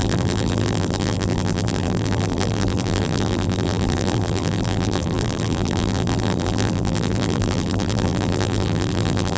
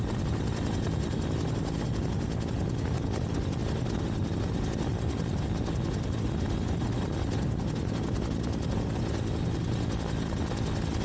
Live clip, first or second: second